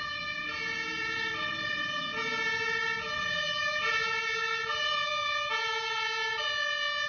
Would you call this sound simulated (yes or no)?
no